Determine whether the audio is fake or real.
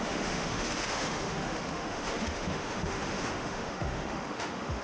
fake